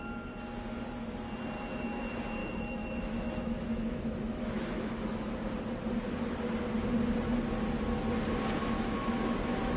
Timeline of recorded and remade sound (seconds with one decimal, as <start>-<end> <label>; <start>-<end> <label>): 0.0-2.4 recorded; 2.4-5.2 remade; 5.2-8.6 recorded; 8.6-9.8 remade